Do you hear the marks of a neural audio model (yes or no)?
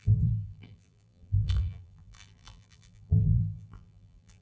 yes